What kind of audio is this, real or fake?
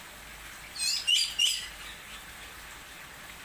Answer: real